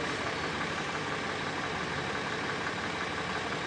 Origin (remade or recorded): recorded